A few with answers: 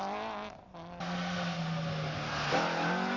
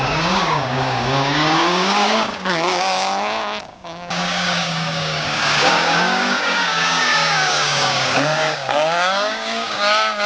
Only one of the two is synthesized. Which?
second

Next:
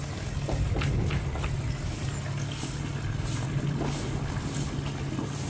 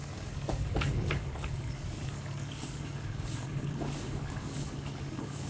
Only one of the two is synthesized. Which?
second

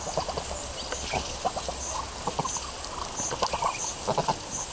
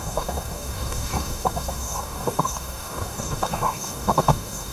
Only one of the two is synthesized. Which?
second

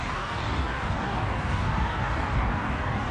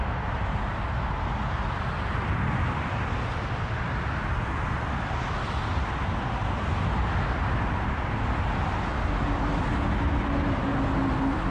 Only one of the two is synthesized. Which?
first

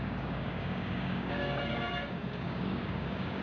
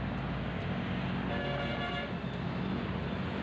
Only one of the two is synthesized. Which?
first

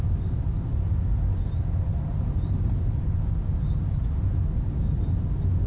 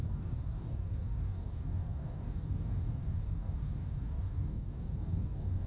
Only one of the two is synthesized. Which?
second